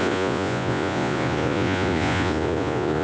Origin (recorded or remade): remade